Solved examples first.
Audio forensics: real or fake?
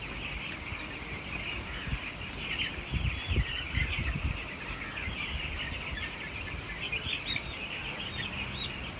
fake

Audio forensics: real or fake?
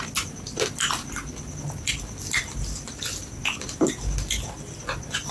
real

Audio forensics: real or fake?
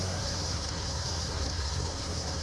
fake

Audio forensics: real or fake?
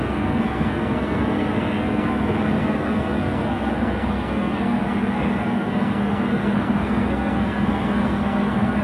fake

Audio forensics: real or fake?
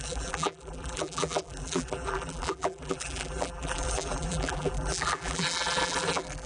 fake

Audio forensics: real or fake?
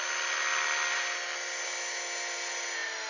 real